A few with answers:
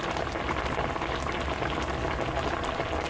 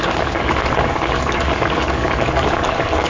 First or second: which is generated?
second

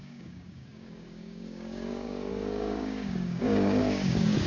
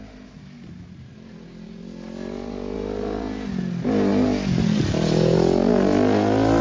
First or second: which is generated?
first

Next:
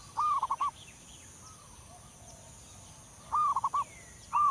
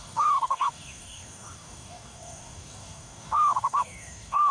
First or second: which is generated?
second